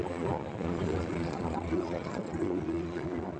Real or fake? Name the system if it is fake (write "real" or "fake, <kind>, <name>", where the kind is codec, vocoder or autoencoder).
fake, vocoder, Vocos